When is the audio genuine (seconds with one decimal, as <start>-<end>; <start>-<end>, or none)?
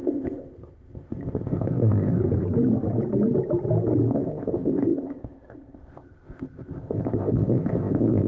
2.2-4.1